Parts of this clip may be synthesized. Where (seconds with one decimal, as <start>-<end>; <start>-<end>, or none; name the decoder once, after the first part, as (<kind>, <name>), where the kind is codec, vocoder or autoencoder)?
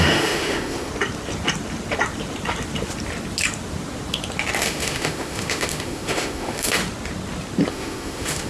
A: 0.0-0.9 (autoencoder, DAC-VAE); 4.6-6.8; 7.7-8.5